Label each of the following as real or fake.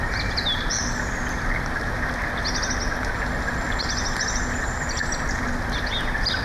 real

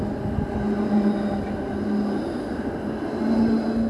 real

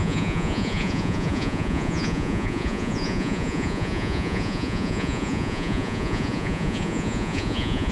fake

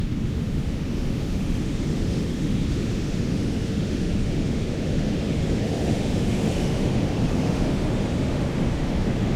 fake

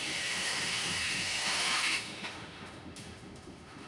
fake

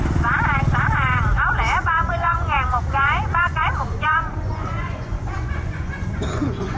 fake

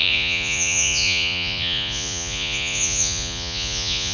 fake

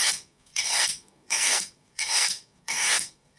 fake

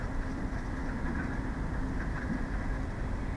real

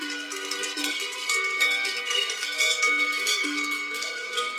fake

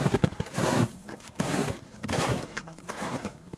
fake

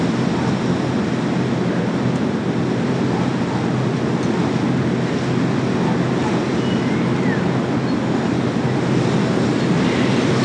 real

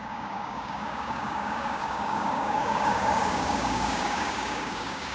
fake